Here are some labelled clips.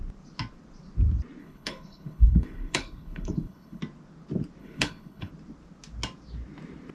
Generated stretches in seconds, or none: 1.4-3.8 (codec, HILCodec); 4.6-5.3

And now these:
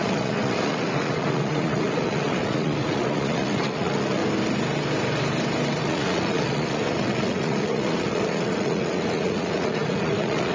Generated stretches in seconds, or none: 0.0-4.2 (vocoder, Vocos); 5.8-10.5